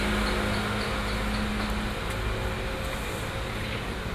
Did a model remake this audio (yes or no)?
no